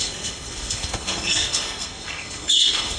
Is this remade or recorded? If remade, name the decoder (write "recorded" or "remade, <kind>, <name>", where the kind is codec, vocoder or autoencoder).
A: remade, codec, SNAC